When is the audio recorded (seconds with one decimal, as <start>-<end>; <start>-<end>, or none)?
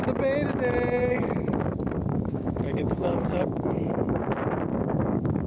0.0-2.1; 4.2-4.7